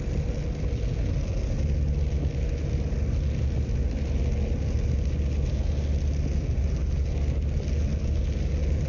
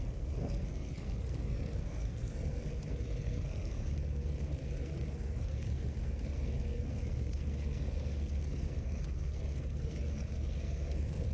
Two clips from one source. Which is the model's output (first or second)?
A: second